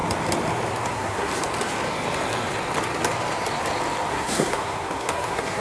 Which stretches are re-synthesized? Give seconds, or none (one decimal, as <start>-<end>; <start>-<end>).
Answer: 0.8-1.3; 4.1-5.6